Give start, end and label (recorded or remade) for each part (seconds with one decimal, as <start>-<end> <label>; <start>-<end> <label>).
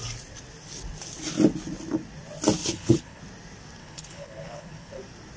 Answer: 0.0-2.6 recorded; 2.6-3.2 remade; 3.2-3.8 recorded; 3.8-5.0 remade; 5.0-5.4 recorded